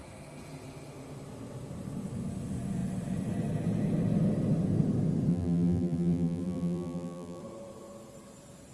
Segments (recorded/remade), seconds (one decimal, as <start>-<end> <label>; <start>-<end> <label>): 0.0-5.3 recorded; 5.3-7.4 remade; 7.4-8.7 recorded